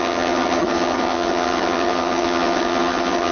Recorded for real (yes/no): no